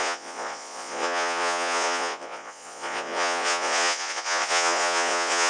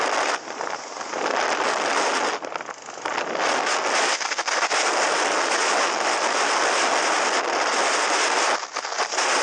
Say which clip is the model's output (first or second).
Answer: first